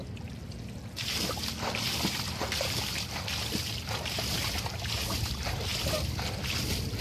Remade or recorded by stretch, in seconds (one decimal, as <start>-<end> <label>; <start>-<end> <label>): 0.0-7.0 recorded